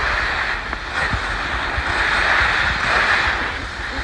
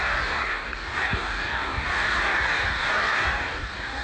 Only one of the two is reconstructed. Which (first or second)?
second